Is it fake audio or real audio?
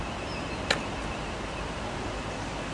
real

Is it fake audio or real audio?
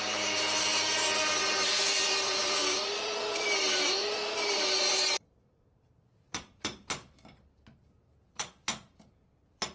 fake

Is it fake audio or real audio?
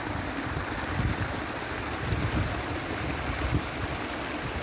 real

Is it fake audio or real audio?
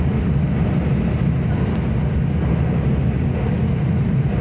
real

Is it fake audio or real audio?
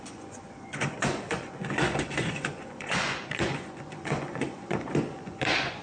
fake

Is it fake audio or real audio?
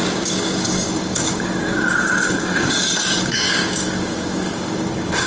fake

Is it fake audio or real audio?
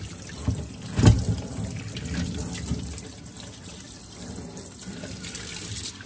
real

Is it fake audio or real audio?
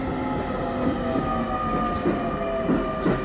real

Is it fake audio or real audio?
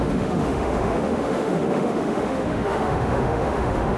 fake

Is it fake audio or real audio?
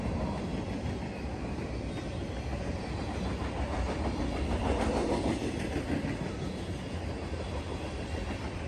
real